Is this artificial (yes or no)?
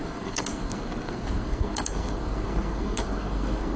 yes